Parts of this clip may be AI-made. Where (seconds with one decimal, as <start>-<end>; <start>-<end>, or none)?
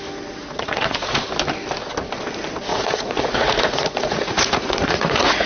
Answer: 0.4-1.2; 2.7-5.5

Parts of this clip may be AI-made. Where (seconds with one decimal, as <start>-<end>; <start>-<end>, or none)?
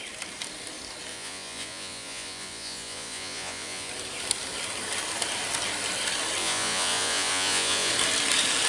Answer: 1.1-3.9; 6.4-7.9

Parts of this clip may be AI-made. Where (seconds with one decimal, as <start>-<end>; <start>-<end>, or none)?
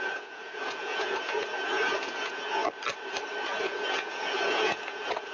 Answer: 0.0-2.6; 3.6-5.3